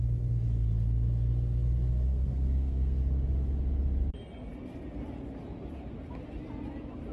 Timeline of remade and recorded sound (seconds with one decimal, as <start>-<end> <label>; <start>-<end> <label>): 0.0-2.1 recorded; 2.1-3.0 remade; 3.0-7.1 recorded